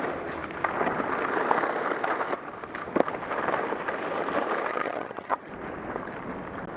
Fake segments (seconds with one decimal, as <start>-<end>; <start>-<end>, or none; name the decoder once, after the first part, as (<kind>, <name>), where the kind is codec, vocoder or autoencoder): 4.7-5.5 (vocoder, HiFi-GAN)